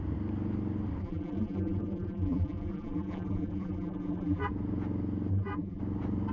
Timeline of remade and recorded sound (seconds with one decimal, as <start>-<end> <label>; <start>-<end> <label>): 0.0-1.0 recorded; 1.0-4.5 remade; 4.5-5.3 recorded; 5.3-5.8 remade; 5.8-6.3 recorded